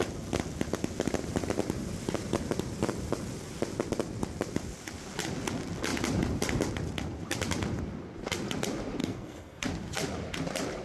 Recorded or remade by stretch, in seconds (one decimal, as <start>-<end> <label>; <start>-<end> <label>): 0.0-9.0 recorded; 9.0-9.6 remade; 9.6-10.8 recorded